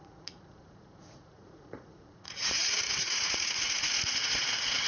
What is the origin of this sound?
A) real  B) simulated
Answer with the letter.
B